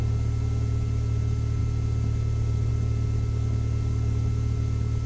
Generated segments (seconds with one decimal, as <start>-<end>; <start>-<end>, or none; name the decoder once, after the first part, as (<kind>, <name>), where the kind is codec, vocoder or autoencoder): none